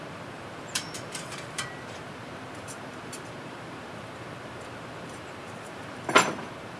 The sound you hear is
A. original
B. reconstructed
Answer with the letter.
B